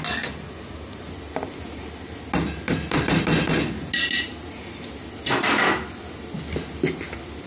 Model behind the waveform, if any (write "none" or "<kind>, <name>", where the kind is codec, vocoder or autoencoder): none